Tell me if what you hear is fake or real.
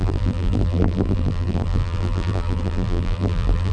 fake